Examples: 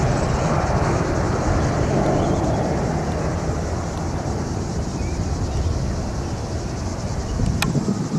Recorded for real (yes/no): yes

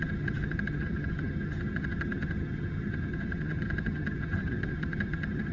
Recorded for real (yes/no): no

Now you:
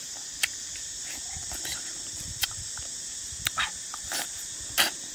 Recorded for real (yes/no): no